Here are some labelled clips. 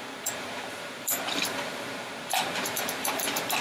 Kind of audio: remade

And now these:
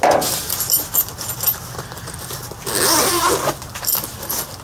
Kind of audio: recorded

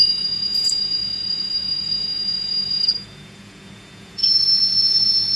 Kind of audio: remade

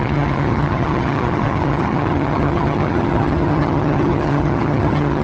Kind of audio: remade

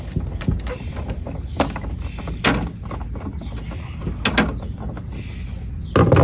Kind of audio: recorded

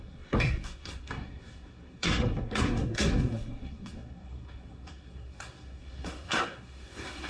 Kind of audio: remade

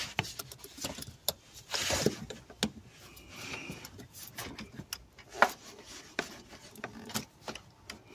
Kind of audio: recorded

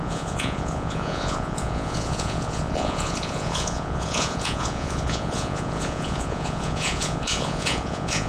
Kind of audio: remade